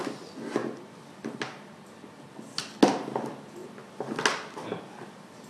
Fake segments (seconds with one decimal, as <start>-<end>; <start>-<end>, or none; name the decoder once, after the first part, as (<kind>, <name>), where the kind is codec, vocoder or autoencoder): none